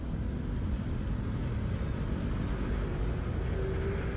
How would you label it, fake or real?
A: real